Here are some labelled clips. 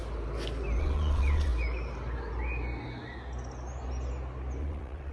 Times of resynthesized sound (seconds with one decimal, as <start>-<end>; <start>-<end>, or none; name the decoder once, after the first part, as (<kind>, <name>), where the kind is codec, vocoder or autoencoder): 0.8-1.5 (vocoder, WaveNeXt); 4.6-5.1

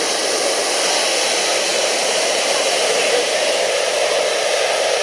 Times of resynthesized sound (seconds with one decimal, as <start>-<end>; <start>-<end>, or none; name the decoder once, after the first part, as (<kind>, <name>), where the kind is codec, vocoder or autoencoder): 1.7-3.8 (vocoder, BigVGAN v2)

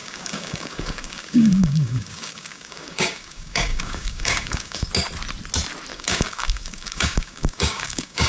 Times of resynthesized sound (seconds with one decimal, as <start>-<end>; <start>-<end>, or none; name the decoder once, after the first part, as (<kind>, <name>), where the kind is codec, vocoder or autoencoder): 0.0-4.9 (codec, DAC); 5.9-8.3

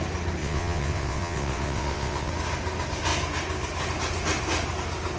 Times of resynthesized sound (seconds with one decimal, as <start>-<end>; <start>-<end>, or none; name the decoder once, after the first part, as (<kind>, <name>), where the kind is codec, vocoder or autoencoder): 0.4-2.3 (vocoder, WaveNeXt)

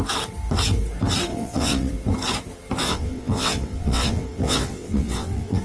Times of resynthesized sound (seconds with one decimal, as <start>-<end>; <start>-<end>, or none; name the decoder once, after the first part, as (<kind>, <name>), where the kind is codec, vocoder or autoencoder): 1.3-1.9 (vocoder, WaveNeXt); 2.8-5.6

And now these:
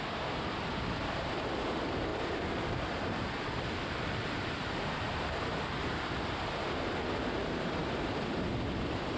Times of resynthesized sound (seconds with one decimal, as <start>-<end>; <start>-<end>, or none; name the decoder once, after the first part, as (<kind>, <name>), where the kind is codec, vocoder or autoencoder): none

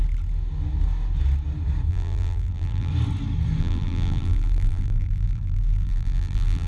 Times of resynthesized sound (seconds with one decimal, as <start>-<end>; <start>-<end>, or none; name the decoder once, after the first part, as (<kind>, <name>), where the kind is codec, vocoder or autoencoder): 1.9-2.9 (vocoder, BigVGAN v2); 3.6-6.7

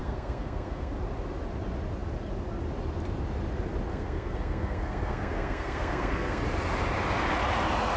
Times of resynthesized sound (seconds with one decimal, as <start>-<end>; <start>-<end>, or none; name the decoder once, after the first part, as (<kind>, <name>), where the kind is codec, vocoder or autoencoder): 0.0-0.9 (codec, SNAC); 3.9-6.4